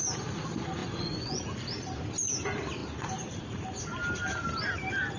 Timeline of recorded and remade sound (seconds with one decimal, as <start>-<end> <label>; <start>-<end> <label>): 0.0-0.8 recorded; 0.8-1.4 remade; 1.4-5.2 recorded